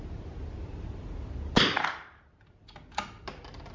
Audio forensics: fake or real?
real